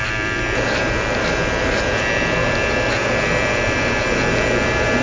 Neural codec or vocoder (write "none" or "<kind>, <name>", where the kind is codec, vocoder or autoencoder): vocoder, BigVGAN v2